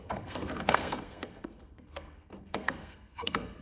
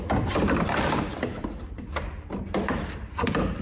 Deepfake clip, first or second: first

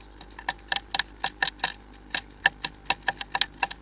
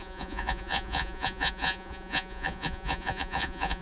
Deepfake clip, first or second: second